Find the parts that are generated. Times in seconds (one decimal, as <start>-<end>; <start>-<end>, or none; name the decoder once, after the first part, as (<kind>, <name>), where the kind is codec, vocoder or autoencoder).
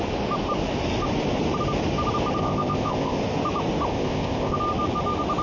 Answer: 2.4-3.2 (codec, ZipCodec); 3.9-4.6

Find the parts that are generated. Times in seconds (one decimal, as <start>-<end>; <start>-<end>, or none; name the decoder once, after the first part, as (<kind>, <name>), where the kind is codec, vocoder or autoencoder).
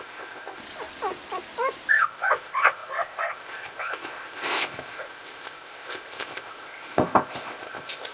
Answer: 0.0-0.6 (codec, ZipCodec); 1.9-8.1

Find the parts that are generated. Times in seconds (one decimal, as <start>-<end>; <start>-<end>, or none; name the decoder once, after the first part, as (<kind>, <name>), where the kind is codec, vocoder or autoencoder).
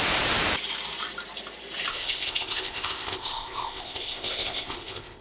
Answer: 1.9-5.2 (codec, ZipCodec)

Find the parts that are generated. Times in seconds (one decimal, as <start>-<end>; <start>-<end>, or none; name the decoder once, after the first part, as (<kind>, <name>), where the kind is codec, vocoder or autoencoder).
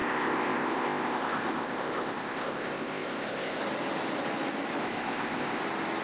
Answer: 0.0-3.6 (codec, ZipCodec); 4.8-5.6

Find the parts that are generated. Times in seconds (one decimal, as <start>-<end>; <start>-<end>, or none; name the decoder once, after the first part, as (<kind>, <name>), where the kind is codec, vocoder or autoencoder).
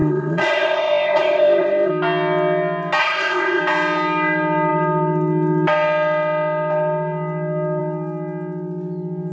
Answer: 0.0-1.9 (codec, ZipCodec); 3.0-3.6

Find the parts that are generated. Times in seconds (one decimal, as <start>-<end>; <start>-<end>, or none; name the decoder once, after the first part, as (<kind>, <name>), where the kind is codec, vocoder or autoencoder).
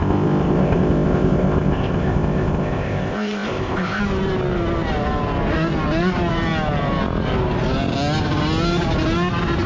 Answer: 0.0-4.0 (codec, ZipCodec)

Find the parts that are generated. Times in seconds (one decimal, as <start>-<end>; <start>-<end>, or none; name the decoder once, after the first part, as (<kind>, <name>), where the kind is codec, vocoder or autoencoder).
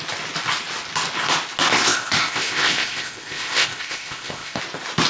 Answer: 1.7-4.6 (codec, ZipCodec)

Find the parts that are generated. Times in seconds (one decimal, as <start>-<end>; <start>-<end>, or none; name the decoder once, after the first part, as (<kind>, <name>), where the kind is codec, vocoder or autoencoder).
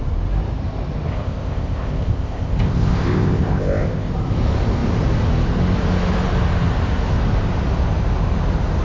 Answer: 1.1-4.1 (codec, ZipCodec)